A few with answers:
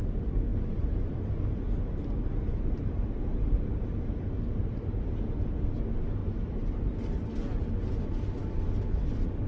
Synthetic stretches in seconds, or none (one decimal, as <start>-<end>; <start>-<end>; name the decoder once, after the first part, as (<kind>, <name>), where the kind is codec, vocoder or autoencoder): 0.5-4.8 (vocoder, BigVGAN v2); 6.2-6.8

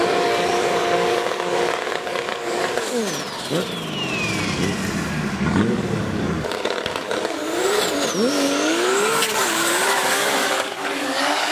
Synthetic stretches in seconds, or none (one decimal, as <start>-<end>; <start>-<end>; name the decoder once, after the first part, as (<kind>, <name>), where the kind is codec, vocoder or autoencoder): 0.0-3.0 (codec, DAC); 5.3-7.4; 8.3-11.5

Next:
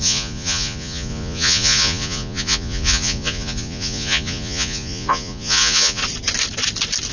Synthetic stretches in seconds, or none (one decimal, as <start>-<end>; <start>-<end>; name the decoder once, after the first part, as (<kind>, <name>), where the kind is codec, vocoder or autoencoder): 0.0-6.0 (vocoder, Vocos)

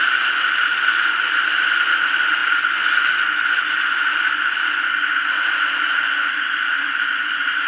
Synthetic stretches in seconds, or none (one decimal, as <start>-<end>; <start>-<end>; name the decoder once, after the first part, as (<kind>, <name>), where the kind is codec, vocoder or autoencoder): none